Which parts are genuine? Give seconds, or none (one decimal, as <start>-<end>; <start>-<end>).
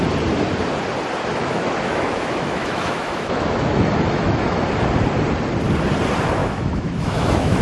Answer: 0.0-1.3; 4.6-6.4